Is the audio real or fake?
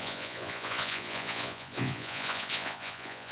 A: fake